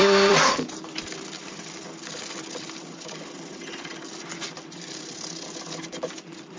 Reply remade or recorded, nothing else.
remade